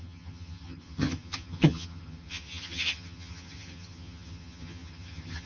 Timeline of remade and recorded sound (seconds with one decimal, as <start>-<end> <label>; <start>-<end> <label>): 0.0-5.5 remade